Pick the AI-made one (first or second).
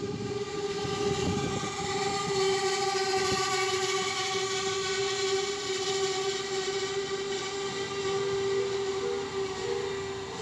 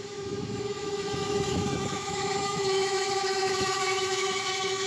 second